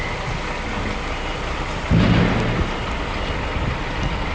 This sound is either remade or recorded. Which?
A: recorded